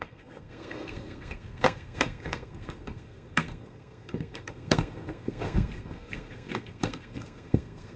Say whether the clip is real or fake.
fake